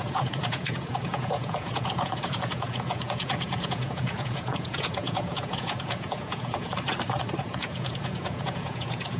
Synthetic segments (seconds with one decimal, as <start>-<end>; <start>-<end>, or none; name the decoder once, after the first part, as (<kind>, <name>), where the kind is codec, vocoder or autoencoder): 0.0-6.7 (vocoder, Vocos); 7.4-9.2